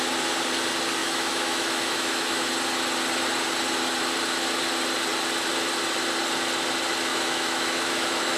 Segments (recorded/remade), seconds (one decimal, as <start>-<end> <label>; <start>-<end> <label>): 0.0-1.0 recorded; 1.0-2.5 remade; 2.5-7.1 recorded; 7.1-8.4 remade